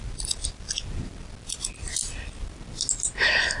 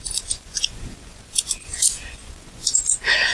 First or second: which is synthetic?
second